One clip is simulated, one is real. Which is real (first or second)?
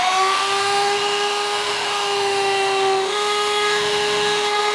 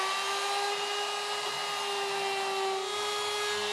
second